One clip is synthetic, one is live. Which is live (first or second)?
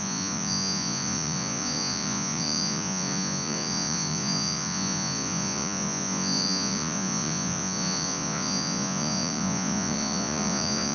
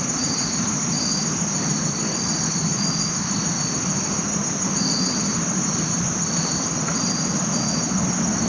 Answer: second